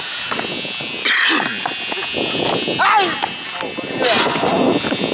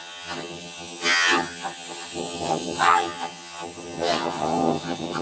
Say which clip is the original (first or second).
first